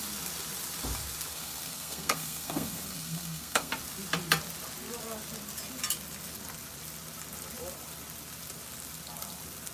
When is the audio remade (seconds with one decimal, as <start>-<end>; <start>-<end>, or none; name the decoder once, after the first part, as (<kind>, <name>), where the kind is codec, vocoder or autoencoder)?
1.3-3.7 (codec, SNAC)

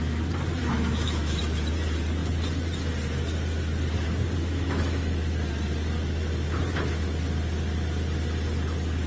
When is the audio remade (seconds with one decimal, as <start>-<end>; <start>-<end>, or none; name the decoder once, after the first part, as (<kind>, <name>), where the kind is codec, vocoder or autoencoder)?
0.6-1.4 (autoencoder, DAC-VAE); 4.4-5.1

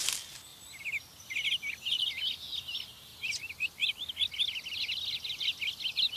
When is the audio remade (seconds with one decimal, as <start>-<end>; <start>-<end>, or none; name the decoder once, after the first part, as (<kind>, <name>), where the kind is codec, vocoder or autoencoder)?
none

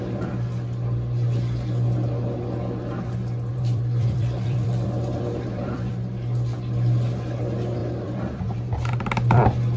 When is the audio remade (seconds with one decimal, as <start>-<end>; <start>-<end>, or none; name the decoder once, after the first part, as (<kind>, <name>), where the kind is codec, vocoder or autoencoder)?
3.5-5.9 (vocoder, BigVGAN v2); 7.8-9.0

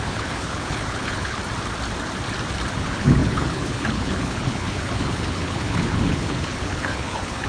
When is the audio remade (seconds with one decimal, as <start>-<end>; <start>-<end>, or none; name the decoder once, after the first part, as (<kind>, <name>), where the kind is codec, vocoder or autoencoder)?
0.0-1.4 (codec, HILCodec); 2.7-7.5

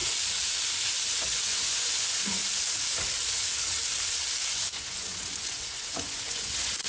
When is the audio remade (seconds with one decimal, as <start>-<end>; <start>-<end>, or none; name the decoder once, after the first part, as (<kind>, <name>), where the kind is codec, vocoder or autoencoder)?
1.1-2.4 (vocoder, Vocos); 4.5-6.9

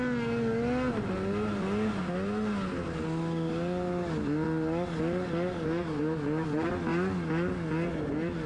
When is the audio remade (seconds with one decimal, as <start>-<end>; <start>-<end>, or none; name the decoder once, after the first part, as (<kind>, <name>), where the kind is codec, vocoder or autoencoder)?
none